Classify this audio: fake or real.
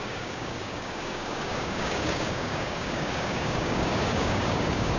fake